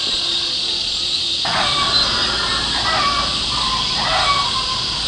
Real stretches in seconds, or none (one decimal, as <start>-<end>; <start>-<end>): 0.0-1.0; 4.1-5.1